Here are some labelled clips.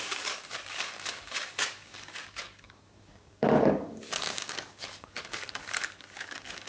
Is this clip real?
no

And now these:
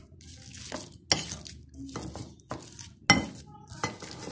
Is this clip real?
yes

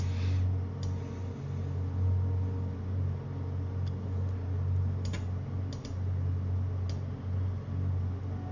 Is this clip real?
yes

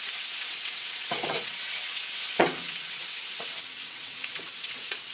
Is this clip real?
no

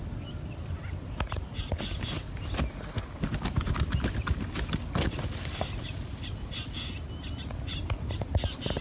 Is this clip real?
yes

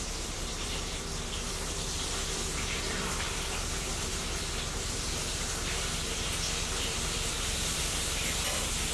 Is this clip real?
no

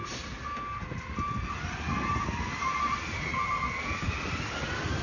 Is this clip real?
yes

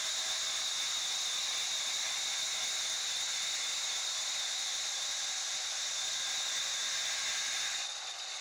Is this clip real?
yes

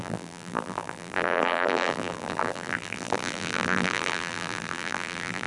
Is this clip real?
no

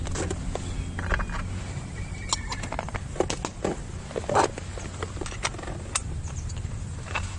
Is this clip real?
yes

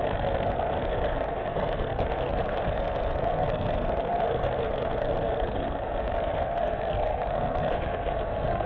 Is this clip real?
no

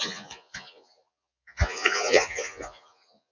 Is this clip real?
no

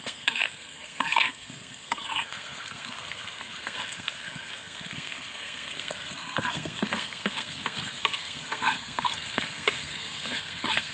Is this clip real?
no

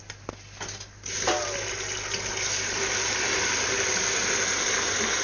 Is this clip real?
yes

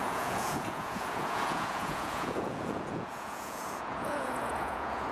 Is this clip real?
no